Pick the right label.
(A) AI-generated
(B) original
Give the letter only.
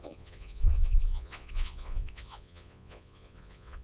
A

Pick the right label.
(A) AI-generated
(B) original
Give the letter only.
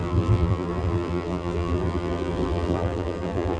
A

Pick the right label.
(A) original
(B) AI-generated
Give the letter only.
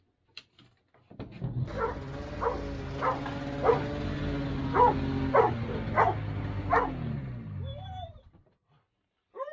A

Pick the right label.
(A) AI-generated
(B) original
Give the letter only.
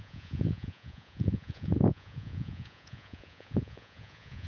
A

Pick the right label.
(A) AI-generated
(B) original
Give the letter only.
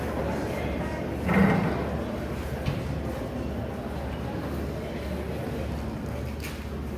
B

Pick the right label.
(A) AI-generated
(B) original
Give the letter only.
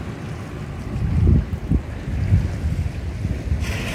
B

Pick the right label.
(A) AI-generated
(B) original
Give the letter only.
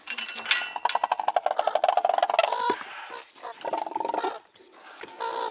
B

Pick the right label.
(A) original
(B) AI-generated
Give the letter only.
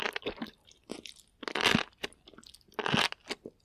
A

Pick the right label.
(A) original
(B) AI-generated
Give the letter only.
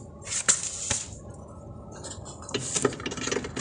A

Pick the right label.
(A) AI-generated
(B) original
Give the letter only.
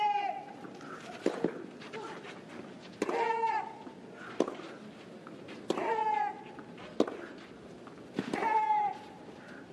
B